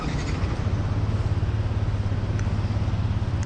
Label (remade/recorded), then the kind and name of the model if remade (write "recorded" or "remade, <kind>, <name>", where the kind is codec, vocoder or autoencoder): recorded